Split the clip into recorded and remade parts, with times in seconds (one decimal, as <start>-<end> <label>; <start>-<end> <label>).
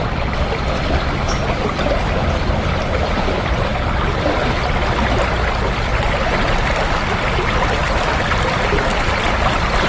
0.0-9.9 recorded